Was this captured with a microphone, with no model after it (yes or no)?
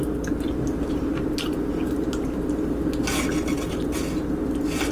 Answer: yes